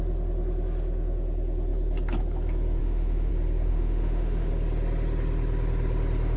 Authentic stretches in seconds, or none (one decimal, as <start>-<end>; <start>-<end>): 0.0-2.8; 3.3-3.7; 4.5-6.4